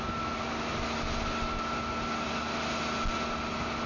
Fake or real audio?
real